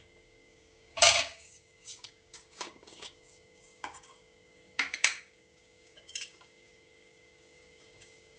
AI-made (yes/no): yes